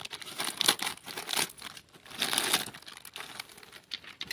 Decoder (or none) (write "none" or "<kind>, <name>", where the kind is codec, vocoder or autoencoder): none